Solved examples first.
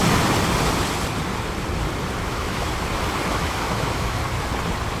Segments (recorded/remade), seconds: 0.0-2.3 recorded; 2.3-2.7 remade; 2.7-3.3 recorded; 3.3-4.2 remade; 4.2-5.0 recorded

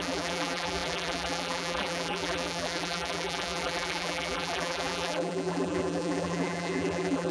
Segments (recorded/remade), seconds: 0.0-7.3 remade

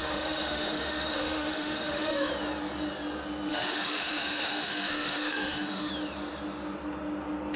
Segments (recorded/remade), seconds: 0.0-2.3 remade; 2.3-3.5 recorded; 3.5-5.9 remade; 5.9-7.6 recorded

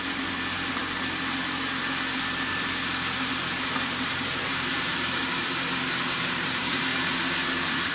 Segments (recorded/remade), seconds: 0.0-0.8 remade; 0.8-2.1 recorded; 2.1-2.5 remade; 2.5-3.3 recorded; 3.3-5.4 remade; 5.4-6.2 recorded; 6.2-6.9 remade; 6.9-7.9 recorded

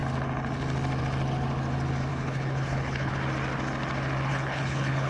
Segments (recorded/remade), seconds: 0.0-2.1 recorded; 2.1-3.1 remade; 3.1-4.3 recorded; 4.3-5.1 remade

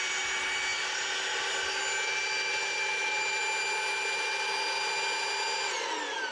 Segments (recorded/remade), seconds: 0.0-6.3 recorded

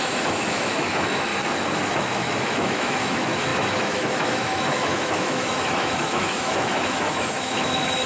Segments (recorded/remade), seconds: 0.0-1.3 remade; 1.3-2.0 recorded; 2.0-8.1 remade